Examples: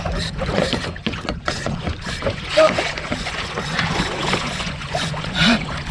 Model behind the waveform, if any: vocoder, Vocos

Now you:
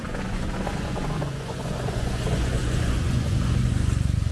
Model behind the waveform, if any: vocoder, Vocos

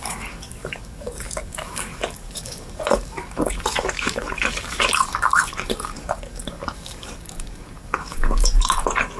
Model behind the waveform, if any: codec, DAC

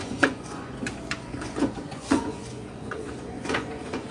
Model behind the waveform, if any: vocoder, Vocos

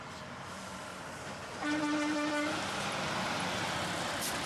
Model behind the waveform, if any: none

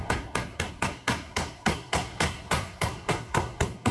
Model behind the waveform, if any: codec, SNAC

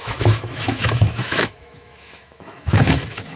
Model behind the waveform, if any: autoencoder, DAC-VAE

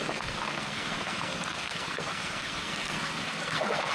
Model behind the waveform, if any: codec, SNAC